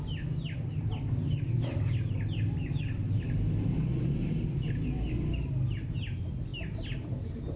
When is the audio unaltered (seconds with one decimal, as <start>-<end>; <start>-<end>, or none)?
0.0-7.6